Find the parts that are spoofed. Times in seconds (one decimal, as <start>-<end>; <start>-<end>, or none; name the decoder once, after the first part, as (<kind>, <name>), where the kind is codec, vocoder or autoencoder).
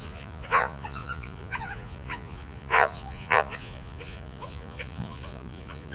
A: 0.0-5.9 (vocoder, Vocos)